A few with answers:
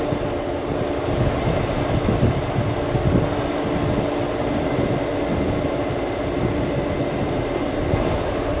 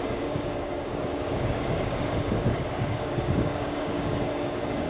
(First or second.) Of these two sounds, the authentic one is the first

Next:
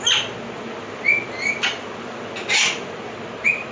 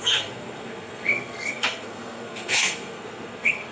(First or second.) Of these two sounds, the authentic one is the first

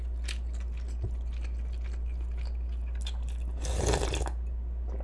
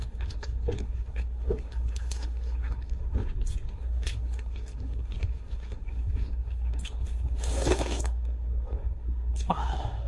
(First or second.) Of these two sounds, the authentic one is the first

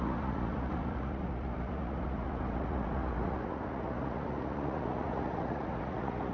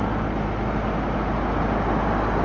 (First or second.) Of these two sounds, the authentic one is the second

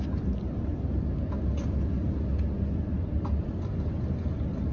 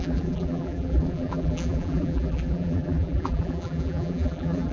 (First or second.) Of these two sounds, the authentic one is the first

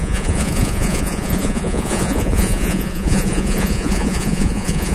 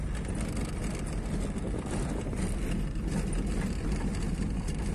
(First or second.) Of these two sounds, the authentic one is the second